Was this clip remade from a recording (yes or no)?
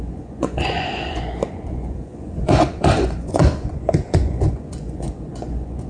yes